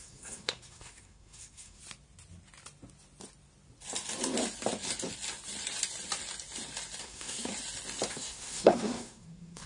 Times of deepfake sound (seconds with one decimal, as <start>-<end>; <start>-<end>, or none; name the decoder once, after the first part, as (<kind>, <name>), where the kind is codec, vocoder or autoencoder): 0.0-1.8 (codec, SNAC); 7.0-7.5; 8.1-9.7